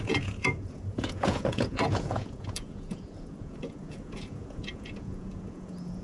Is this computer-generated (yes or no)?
yes